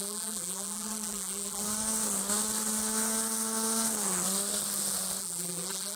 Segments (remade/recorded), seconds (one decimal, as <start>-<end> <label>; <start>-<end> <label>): 0.0-1.6 remade; 1.6-5.2 recorded; 5.2-6.0 remade